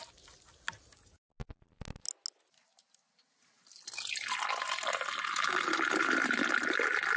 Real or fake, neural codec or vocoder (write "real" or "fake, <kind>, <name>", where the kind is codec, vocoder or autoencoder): real